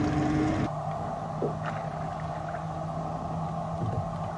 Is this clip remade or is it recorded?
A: recorded